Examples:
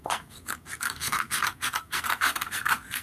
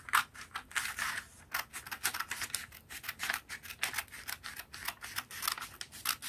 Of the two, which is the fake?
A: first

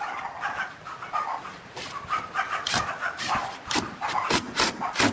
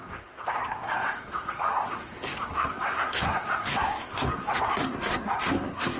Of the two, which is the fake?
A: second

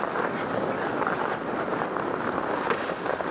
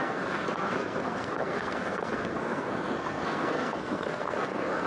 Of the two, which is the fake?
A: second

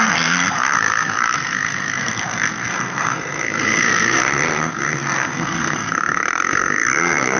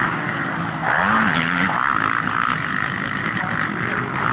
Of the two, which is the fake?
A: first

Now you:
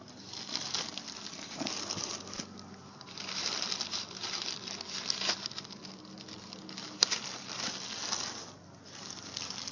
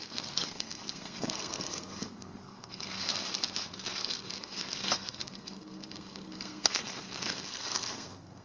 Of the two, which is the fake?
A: second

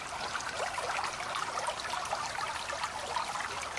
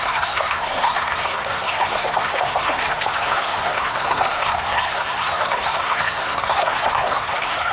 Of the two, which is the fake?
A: second